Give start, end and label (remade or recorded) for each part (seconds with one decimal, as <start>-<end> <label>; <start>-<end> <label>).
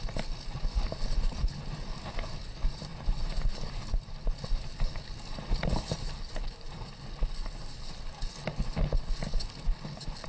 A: 0.0-10.3 recorded